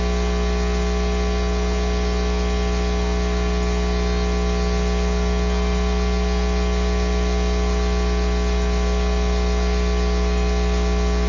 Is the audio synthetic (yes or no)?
no